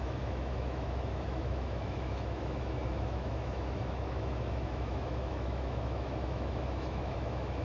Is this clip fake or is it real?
fake